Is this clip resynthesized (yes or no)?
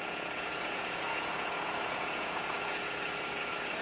yes